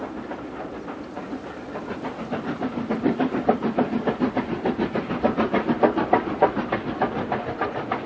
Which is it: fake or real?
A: real